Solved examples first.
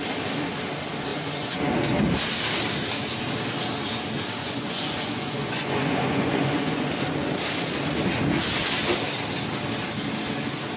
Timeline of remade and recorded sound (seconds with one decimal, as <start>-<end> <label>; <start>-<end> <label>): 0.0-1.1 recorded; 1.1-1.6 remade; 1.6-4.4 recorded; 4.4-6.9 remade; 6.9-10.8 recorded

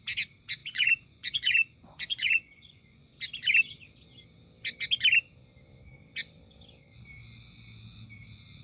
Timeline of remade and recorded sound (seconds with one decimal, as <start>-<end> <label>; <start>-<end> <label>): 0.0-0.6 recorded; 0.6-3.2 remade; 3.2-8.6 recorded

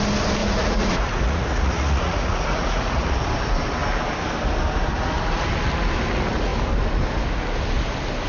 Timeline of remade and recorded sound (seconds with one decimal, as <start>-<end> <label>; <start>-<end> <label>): 0.0-0.4 recorded; 0.4-3.1 remade; 3.1-8.3 recorded

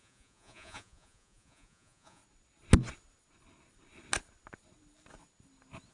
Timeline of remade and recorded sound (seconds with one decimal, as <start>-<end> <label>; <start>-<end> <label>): 0.0-2.2 remade; 2.2-5.9 recorded

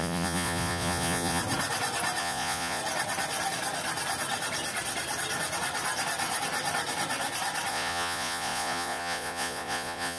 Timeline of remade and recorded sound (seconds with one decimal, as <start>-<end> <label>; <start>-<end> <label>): 0.0-1.4 remade; 1.4-2.2 recorded; 2.2-2.8 remade; 2.8-7.7 recorded; 7.7-10.2 remade